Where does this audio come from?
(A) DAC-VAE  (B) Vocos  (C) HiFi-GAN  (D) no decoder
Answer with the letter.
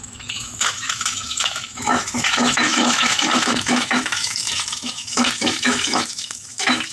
A